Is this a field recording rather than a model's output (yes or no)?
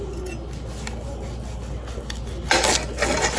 yes